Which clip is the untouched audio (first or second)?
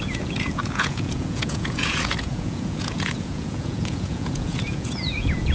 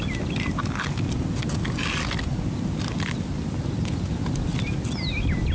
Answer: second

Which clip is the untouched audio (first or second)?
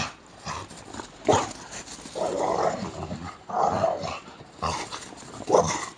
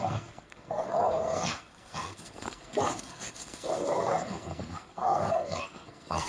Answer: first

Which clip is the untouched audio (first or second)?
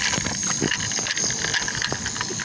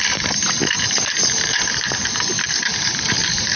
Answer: first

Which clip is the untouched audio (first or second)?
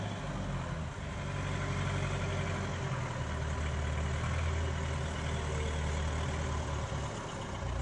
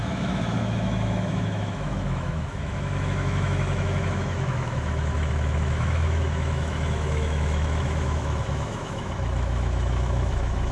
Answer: first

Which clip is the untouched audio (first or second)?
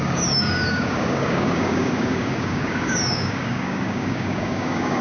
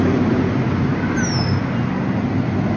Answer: second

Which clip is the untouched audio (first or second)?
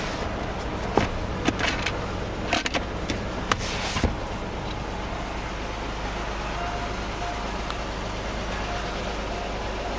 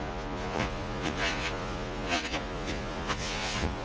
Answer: first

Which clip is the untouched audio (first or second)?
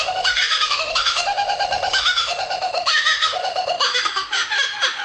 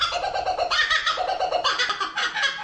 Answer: second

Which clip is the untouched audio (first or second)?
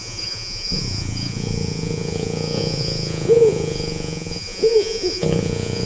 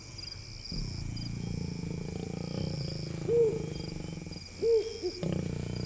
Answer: second